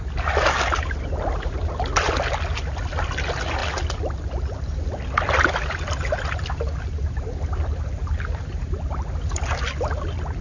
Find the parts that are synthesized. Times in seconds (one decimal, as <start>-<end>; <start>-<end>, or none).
none